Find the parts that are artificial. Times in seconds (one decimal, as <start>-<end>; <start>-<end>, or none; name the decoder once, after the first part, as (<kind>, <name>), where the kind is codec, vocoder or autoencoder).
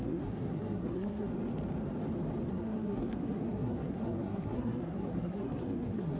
0.0-1.3 (codec, SNAC); 2.5-6.2